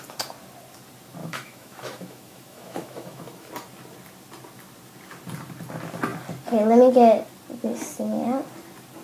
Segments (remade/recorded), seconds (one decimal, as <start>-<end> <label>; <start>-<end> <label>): 0.0-1.2 recorded; 1.2-3.5 remade; 3.5-9.0 recorded